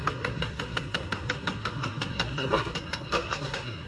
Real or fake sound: fake